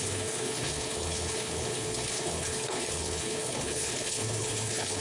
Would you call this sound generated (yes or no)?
yes